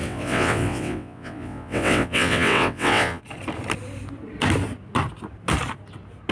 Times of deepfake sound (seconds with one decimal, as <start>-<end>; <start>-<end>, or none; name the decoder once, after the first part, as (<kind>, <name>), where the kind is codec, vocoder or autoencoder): 0.0-3.2 (vocoder, WaveNeXt)